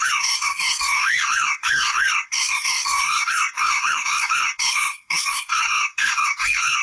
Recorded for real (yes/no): no